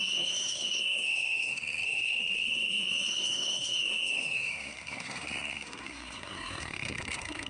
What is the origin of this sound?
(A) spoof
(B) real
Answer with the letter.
A